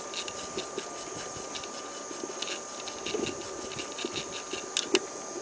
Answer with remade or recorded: recorded